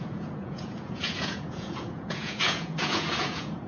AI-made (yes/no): yes